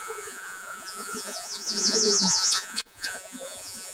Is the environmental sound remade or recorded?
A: remade